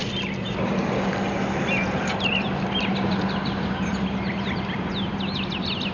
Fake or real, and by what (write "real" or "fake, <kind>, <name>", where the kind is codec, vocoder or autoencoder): real